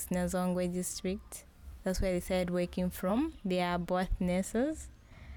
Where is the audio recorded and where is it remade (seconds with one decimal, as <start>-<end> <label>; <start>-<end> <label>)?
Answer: 0.0-1.6 recorded; 1.6-3.1 remade; 3.1-5.4 recorded